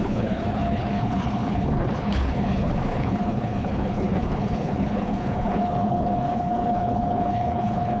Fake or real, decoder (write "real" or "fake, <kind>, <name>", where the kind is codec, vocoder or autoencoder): fake, codec, HILCodec